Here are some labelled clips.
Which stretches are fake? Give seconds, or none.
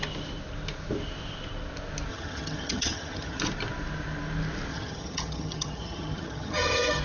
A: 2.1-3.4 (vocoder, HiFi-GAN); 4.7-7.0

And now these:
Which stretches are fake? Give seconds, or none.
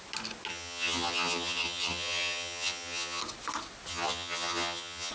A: 0.5-3.2 (vocoder, HiFi-GAN); 3.9-5.1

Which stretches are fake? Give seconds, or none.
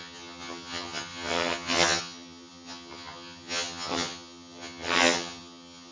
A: 0.0-5.9 (vocoder, HiFi-GAN)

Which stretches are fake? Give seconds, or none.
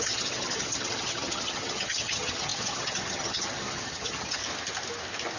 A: 0.0-4.4 (vocoder, HiFi-GAN)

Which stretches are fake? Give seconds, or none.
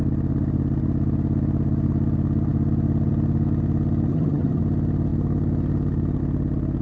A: 4.1-4.6 (vocoder, HiFi-GAN)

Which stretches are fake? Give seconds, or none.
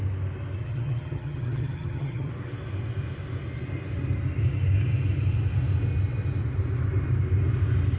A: 0.6-2.3 (vocoder, HiFi-GAN)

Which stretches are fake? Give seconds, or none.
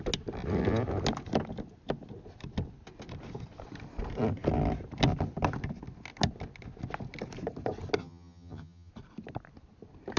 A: 8.0-8.9 (vocoder, HiFi-GAN)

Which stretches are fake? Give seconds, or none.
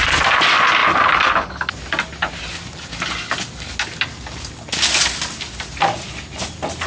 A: none